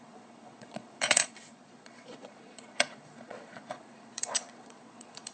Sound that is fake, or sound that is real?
fake